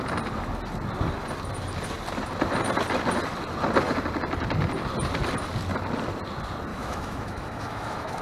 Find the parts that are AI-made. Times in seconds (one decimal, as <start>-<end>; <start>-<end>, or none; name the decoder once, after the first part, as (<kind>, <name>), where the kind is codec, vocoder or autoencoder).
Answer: 6.7-8.2 (autoencoder, DAC-VAE)

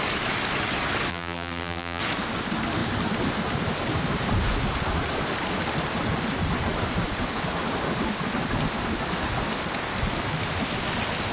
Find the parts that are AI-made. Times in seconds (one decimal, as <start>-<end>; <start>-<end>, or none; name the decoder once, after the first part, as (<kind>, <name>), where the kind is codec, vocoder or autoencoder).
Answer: 1.1-2.0 (vocoder, BigVGAN v2)

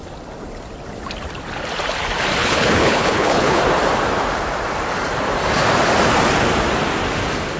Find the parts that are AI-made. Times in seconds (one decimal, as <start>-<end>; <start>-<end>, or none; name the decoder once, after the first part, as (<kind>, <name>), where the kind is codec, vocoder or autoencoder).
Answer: 2.4-3.6 (codec, HILCodec)

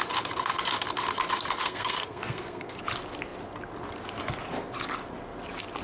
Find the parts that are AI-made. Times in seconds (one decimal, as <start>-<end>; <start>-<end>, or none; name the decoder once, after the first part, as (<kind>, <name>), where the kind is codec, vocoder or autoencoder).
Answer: 1.6-2.8 (codec, SNAC)